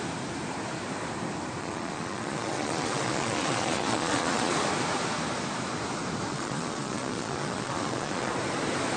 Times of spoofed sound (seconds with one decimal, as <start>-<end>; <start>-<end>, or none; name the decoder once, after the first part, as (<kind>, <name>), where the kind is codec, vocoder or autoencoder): 1.6-4.5 (vocoder, Vocos); 6.3-8.3